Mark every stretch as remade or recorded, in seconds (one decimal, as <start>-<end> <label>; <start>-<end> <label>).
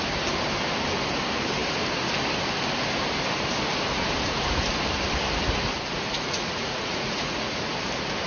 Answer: 0.0-5.9 recorded; 5.9-7.7 remade; 7.7-8.3 recorded